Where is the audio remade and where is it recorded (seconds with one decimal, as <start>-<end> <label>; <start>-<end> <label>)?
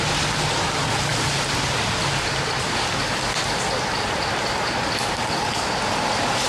0.0-6.5 recorded